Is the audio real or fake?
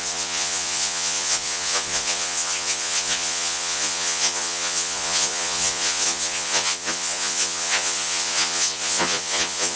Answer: fake